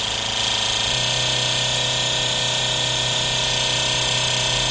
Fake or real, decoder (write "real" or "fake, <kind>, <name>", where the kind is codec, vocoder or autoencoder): real